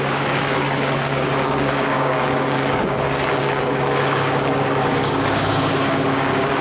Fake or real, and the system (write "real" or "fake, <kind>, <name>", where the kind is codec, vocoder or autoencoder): fake, codec, DAC